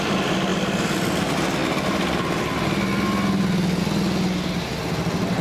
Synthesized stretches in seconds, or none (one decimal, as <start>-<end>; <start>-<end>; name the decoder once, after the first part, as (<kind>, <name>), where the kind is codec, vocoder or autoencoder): none